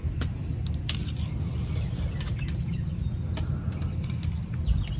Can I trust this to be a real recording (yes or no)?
yes